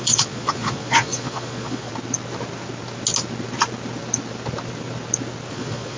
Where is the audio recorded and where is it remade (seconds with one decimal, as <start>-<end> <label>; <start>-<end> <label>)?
0.0-1.9 remade; 1.9-5.5 recorded; 5.5-6.0 remade